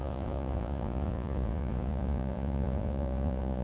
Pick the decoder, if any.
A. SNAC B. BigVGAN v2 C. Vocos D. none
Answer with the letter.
C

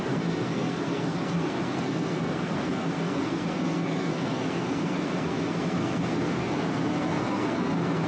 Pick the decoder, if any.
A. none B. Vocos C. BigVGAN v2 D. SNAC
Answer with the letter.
D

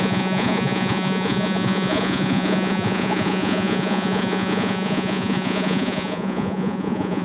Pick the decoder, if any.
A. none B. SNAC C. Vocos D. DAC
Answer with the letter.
C